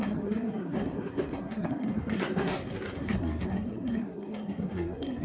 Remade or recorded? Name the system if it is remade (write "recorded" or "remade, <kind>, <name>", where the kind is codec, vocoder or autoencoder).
remade, codec, SNAC